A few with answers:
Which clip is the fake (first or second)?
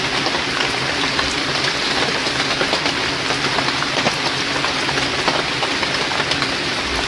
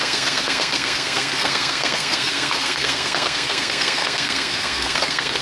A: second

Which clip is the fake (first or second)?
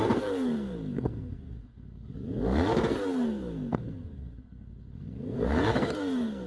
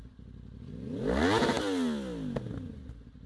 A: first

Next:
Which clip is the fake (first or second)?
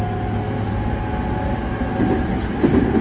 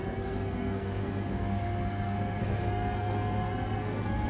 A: second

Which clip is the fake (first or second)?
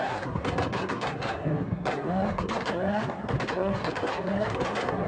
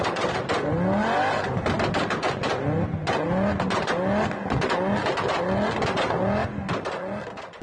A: first